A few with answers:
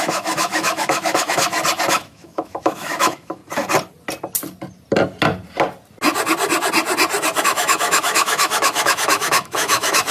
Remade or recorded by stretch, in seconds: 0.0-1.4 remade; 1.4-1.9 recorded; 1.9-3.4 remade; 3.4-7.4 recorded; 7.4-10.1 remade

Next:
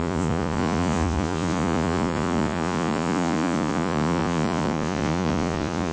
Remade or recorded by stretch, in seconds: 0.0-5.9 remade

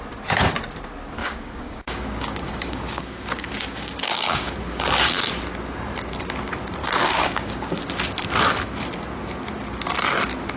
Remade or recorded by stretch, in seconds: 0.0-1.2 recorded; 1.2-5.3 remade; 5.3-6.8 recorded; 6.8-7.8 remade; 7.8-10.6 recorded

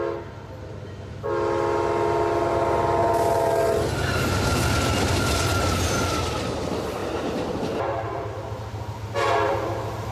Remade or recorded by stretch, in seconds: 0.0-7.0 recorded; 7.0-8.3 remade; 8.3-10.1 recorded

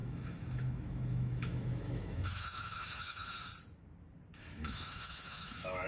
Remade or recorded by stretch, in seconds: 0.0-3.5 remade; 3.5-4.4 recorded; 4.4-5.9 remade